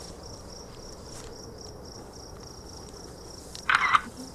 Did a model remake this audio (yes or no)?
no